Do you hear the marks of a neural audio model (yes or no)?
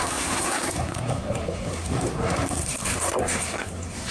yes